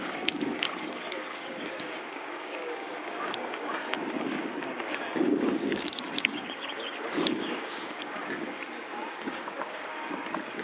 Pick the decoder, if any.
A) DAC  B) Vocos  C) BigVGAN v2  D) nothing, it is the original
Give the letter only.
A